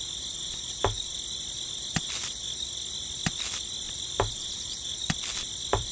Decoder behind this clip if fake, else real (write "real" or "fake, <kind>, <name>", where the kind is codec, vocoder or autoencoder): fake, vocoder, BigVGAN v2